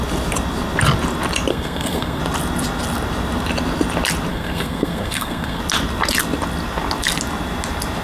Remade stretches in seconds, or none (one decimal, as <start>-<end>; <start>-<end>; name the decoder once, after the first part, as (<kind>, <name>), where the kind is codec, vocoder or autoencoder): 1.5-2.2 (codec, SNAC); 4.3-5.6